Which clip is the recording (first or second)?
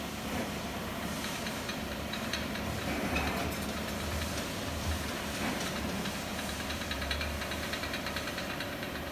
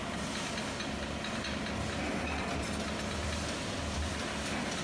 second